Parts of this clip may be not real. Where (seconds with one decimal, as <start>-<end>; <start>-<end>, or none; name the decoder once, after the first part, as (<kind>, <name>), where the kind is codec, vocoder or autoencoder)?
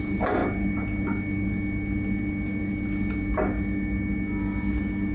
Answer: none